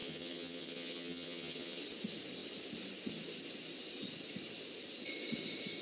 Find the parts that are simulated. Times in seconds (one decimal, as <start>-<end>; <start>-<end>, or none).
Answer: 0.0-1.8